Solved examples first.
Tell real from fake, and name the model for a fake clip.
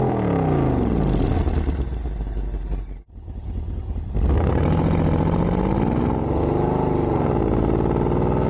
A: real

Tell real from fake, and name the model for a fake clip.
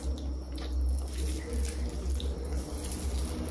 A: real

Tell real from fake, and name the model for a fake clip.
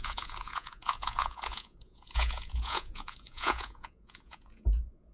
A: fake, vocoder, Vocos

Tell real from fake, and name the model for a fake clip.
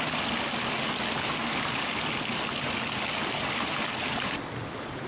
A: real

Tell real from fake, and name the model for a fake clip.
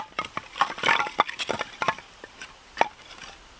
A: fake, vocoder, BigVGAN v2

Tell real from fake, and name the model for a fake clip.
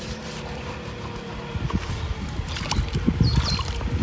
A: real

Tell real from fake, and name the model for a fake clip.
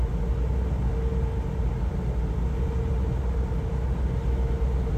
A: real